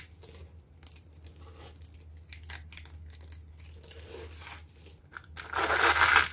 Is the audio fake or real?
real